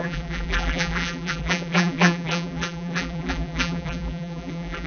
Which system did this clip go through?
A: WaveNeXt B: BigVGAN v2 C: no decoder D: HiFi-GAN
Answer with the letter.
B